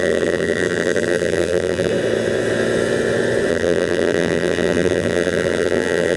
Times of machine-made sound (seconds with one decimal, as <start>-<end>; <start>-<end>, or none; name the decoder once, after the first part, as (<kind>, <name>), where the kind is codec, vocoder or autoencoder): 0.0-1.9 (vocoder, BigVGAN v2); 3.5-6.2